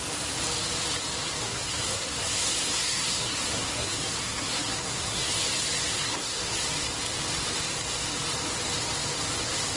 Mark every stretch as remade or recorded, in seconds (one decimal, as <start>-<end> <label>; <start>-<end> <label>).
0.0-1.4 recorded; 1.4-5.3 remade; 5.3-5.9 recorded; 5.9-6.6 remade; 6.6-9.8 recorded